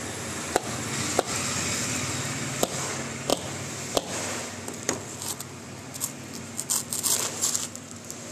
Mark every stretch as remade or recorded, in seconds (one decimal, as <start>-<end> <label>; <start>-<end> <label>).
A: 0.0-8.3 recorded